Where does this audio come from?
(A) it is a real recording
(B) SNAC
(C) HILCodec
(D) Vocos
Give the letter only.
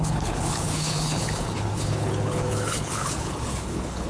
C